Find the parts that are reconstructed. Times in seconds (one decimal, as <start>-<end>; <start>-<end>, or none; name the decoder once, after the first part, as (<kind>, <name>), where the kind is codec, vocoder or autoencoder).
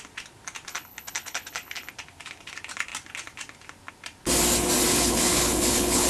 0.7-1.9 (codec, HILCodec); 4.9-6.1